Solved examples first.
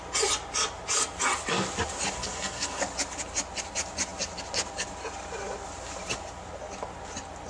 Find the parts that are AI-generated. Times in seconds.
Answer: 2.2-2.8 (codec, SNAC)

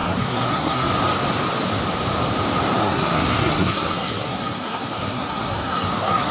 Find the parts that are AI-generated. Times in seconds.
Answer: 0.0-0.9 (codec, SNAC); 2.8-6.3

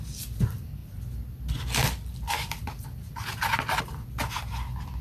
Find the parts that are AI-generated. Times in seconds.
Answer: none

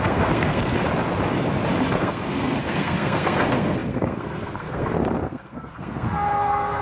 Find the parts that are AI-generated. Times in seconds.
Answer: 0.0-0.7 (codec, SNAC); 2.0-6.8

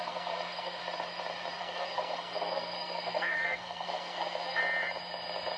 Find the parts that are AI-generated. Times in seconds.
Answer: 0.0-0.8 (codec, SNAC); 1.6-4.6